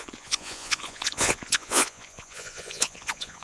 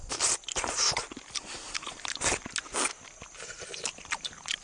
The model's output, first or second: first